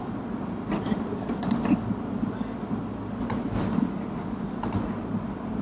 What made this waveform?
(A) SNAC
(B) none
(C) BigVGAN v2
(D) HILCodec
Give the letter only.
C